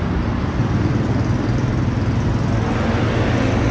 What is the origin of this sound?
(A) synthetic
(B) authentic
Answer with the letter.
B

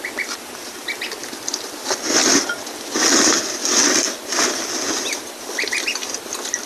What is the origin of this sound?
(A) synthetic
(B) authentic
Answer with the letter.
B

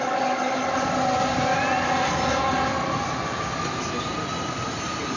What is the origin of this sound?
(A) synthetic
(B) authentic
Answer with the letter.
B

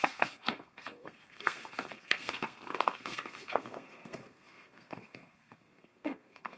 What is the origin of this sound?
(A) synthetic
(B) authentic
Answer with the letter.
A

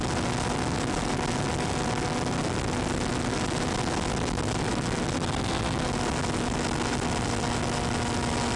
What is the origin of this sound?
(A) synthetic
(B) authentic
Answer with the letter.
B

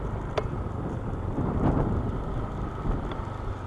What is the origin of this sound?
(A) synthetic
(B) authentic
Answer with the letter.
B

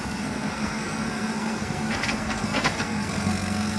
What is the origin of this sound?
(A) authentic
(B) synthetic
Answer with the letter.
B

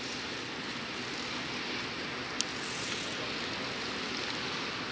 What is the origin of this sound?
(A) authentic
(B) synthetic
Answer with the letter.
A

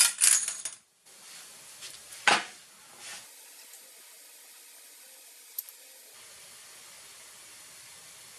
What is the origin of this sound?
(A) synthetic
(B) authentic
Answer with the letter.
B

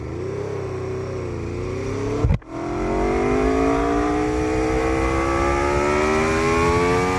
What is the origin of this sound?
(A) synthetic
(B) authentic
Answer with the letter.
B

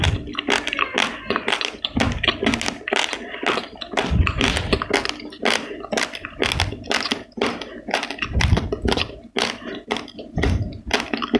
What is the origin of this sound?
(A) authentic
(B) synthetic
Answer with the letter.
A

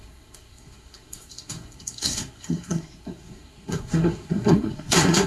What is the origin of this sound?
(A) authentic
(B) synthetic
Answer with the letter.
B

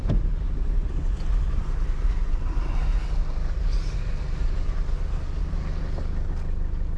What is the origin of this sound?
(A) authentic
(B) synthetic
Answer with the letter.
A